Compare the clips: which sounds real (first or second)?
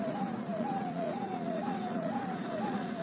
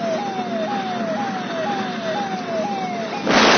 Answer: second